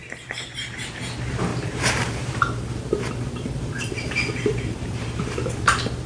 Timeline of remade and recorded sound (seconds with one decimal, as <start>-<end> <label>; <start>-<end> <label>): 0.0-1.5 recorded; 1.5-5.2 remade; 5.2-6.1 recorded